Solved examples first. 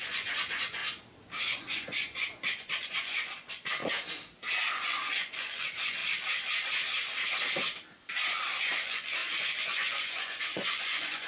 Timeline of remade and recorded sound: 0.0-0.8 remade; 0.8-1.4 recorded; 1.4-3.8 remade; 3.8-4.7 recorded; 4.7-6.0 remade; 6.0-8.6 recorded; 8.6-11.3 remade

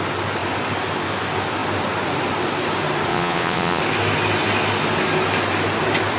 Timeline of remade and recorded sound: 0.0-3.1 recorded; 3.1-3.8 remade; 3.8-6.2 recorded

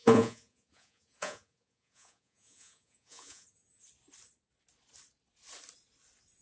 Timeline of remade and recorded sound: 0.0-3.8 remade; 3.8-6.4 recorded

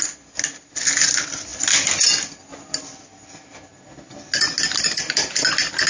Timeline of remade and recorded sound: 0.0-5.9 recorded

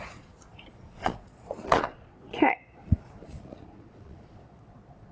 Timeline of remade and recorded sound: 0.0-5.1 remade